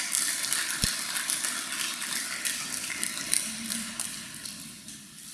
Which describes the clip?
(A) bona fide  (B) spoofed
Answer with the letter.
A